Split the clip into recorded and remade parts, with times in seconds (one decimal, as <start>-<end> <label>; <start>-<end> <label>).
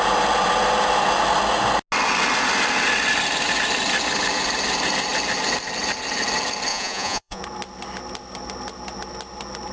0.0-6.7 recorded; 6.7-7.4 remade; 7.4-9.7 recorded